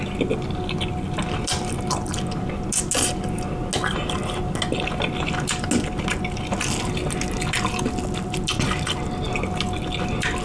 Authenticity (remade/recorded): recorded